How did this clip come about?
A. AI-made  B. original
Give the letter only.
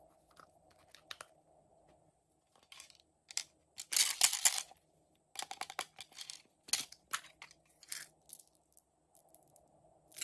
B